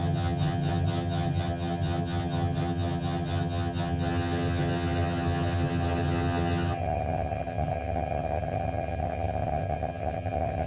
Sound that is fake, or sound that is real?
fake